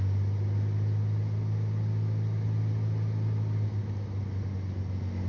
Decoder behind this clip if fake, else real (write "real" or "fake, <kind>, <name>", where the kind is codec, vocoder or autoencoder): real